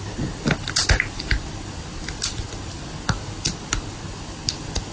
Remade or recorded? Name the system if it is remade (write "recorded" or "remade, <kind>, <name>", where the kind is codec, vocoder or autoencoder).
recorded